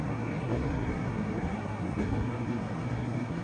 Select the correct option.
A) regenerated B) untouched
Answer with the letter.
A